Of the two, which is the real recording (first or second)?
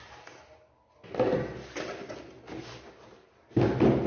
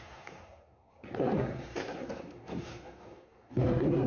first